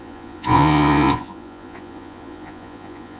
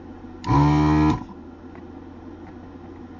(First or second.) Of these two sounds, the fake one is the first